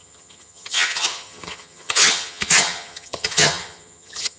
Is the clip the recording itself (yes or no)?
no